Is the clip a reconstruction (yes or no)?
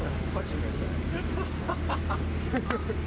no